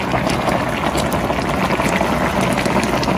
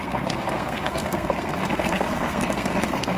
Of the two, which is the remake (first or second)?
second